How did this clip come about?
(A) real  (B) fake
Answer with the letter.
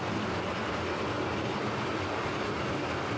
A